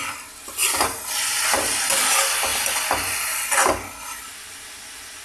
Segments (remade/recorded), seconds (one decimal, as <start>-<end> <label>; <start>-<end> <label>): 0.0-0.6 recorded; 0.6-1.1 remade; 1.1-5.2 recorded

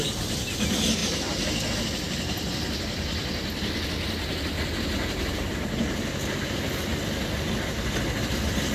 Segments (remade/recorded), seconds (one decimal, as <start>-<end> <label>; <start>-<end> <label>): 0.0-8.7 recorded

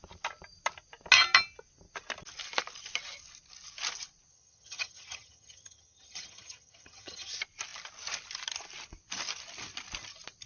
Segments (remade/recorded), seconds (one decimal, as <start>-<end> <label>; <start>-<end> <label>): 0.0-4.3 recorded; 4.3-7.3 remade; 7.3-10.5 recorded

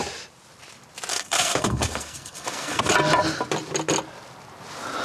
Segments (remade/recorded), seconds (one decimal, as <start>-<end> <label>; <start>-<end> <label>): 0.0-1.1 recorded; 1.1-2.8 remade; 2.8-5.0 recorded